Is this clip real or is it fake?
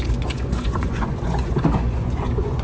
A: fake